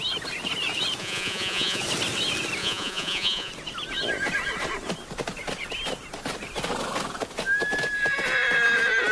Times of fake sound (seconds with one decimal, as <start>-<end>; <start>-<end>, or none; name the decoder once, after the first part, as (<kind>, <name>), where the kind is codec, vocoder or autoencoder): 1.0-1.8 (vocoder, Vocos); 2.6-3.5